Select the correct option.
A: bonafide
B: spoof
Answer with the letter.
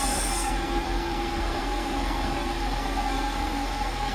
B